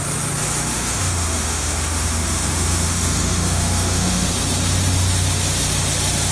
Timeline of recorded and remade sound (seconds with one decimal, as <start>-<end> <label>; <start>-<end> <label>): 0.0-0.7 recorded; 0.7-4.3 remade; 4.3-6.3 recorded